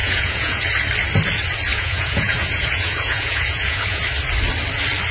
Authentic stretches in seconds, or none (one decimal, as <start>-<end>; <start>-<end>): 0.6-1.7; 4.0-5.1